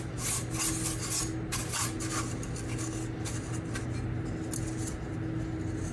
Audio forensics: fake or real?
real